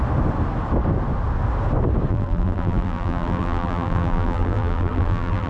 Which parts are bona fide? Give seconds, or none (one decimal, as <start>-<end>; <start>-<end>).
0.0-2.1